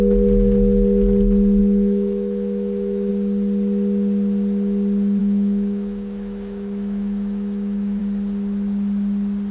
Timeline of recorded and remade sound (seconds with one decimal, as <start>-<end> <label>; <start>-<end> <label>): 0.0-1.6 recorded; 1.6-3.1 remade; 3.1-5.2 recorded; 5.2-8.0 remade; 8.0-9.5 recorded